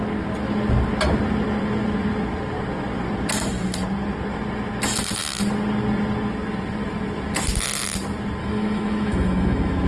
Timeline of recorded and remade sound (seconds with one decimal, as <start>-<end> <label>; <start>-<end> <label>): 0.0-8.4 recorded; 8.4-9.9 remade

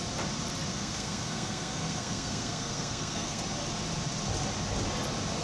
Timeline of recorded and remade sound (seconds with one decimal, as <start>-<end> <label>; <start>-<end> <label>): 0.0-0.7 recorded; 0.7-3.4 remade; 3.4-5.4 recorded